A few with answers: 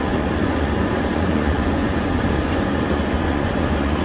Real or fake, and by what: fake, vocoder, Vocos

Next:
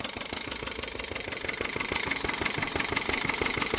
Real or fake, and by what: real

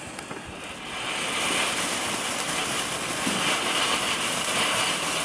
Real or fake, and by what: real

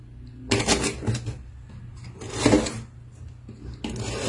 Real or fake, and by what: real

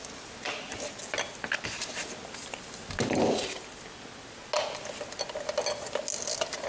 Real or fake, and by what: real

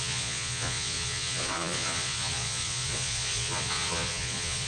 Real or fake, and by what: fake, vocoder, Vocos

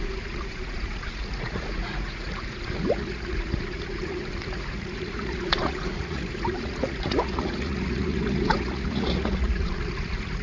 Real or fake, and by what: fake, vocoder, Vocos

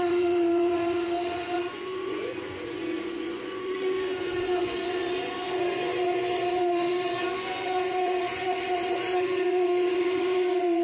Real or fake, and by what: fake, vocoder, Vocos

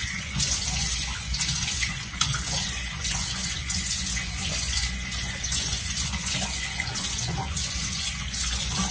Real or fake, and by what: fake, vocoder, Vocos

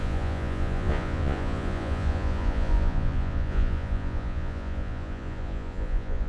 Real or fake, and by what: fake, vocoder, Vocos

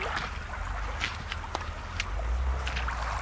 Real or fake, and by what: real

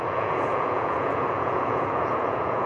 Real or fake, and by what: fake, vocoder, Vocos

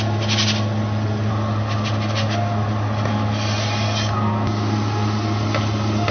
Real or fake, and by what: real